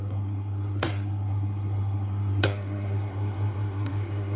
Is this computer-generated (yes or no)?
yes